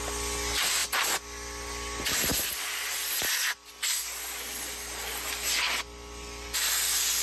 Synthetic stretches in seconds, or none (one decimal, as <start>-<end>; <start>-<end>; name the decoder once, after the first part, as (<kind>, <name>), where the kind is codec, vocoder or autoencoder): none